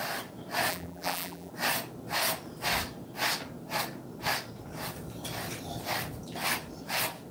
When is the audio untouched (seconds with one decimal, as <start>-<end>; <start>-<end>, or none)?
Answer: 0.0-0.7; 1.5-7.3